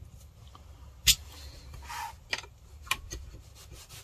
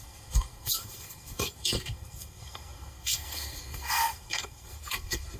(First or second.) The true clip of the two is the first